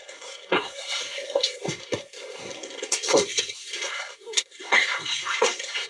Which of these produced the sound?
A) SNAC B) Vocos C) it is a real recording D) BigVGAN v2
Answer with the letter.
A